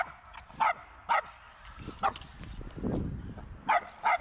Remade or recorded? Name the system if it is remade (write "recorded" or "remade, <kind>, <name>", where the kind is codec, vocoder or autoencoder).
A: recorded